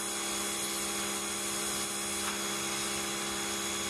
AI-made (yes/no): no